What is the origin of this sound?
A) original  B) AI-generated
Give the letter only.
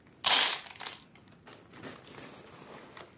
A